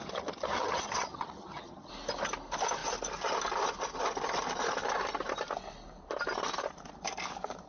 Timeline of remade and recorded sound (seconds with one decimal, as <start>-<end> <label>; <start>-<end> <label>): 0.0-1.9 remade; 1.9-7.7 recorded